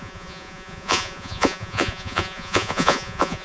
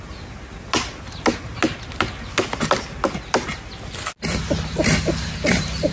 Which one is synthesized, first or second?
first